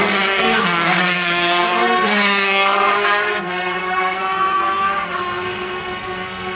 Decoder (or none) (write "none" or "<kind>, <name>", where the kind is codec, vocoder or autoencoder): codec, SNAC